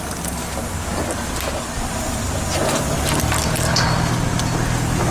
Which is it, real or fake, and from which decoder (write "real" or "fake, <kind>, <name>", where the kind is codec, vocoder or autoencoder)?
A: real